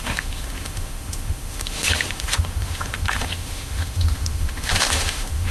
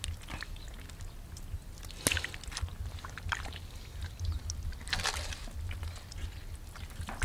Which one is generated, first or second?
first